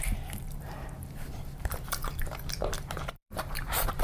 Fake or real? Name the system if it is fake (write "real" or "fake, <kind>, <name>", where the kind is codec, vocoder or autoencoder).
fake, vocoder, BigVGAN v2